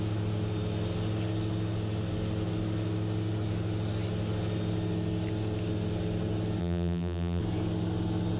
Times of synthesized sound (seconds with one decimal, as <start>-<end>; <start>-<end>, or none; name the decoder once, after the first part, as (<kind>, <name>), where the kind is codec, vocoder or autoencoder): 6.6-7.4 (vocoder, BigVGAN v2)